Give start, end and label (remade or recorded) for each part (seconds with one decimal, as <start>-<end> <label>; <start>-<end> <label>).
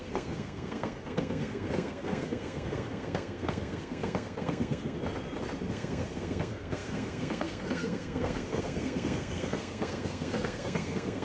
0.0-5.0 remade; 5.0-5.7 recorded; 5.7-11.2 remade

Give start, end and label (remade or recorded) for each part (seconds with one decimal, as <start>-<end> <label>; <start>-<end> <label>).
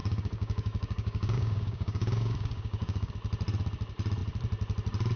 0.0-3.1 remade; 3.1-5.2 recorded